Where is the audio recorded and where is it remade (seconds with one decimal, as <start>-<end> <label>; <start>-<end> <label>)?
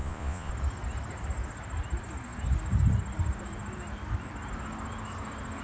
0.0-0.5 remade; 0.5-5.6 recorded